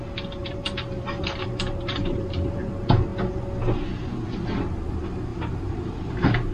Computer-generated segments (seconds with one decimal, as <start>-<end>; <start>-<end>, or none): 0.4-2.7; 5.3-6.5